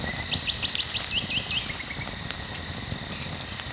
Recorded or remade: recorded